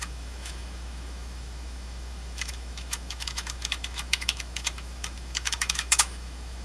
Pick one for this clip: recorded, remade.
remade